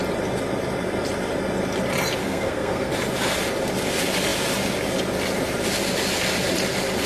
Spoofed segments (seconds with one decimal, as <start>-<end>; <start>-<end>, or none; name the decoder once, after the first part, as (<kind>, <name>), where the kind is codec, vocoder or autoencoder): 2.2-2.9 (codec, SNAC)